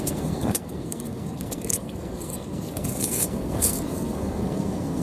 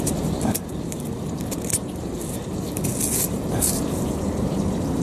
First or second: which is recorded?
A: second